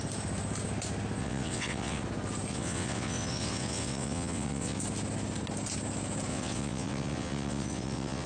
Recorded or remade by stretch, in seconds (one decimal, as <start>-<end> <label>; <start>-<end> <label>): 0.0-1.2 recorded; 1.2-2.0 remade; 2.0-2.5 recorded; 2.5-4.8 remade; 4.8-6.3 recorded; 6.3-8.3 remade